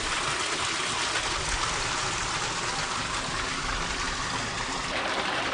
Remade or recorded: recorded